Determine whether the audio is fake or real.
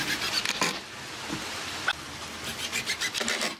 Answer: real